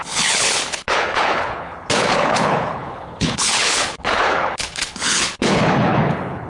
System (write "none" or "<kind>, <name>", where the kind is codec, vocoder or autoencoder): codec, HILCodec